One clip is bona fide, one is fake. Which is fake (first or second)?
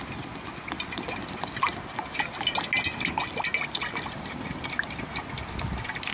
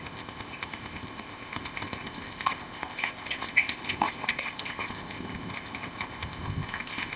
second